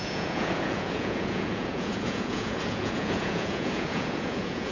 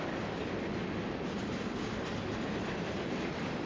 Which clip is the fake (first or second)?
first